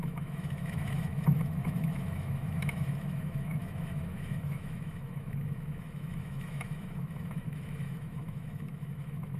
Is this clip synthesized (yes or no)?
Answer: yes